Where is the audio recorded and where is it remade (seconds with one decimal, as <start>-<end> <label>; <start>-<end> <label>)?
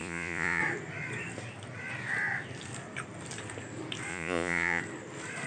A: 0.0-0.6 remade; 0.6-4.1 recorded; 4.1-4.8 remade; 4.8-5.5 recorded